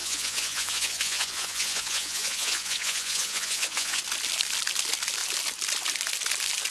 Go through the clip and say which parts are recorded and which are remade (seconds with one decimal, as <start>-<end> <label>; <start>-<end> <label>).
0.0-4.0 remade; 4.0-6.7 recorded